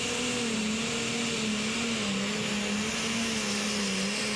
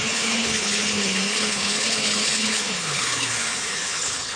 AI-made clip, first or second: second